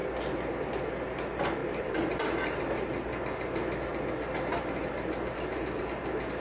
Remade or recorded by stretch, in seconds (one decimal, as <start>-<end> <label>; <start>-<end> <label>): 0.0-1.6 recorded; 1.6-2.6 remade; 2.6-6.4 recorded